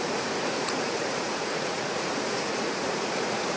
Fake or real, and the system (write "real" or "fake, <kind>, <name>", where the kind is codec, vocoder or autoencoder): fake, vocoder, Vocos